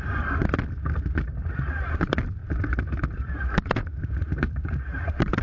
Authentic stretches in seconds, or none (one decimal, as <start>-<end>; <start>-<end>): 0.4-2.0; 2.4-3.0